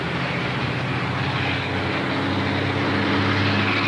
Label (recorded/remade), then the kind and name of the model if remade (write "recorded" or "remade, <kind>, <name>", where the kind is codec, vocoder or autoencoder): recorded